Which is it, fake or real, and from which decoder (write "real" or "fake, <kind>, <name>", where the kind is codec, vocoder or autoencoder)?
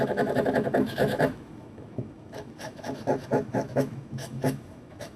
fake, autoencoder, DAC-VAE